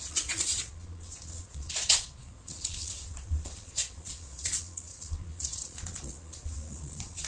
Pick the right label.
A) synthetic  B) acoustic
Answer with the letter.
A